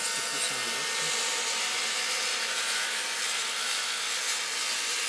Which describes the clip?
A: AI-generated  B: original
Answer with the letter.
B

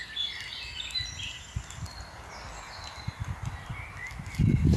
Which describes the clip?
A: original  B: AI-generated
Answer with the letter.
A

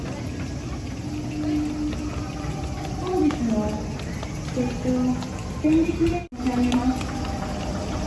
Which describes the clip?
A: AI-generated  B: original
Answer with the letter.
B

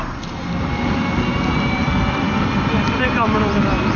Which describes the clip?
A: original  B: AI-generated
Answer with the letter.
B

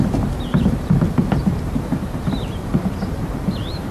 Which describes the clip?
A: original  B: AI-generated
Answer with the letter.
B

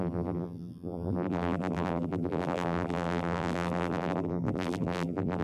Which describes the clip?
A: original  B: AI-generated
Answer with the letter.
B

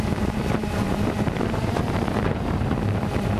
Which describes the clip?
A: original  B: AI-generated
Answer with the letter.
B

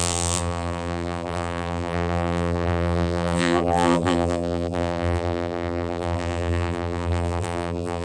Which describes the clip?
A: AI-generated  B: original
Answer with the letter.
A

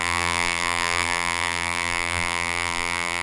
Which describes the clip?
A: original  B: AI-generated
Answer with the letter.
B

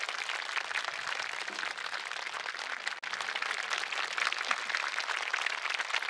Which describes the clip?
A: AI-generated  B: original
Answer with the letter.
B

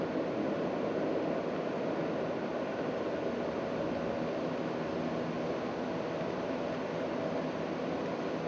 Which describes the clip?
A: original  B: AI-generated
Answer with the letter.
A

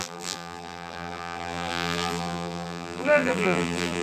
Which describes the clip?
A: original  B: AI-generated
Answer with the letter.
B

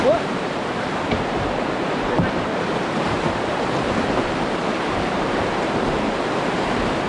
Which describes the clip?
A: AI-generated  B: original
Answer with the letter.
A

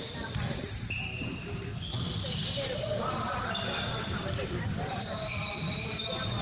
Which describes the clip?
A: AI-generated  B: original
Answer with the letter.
A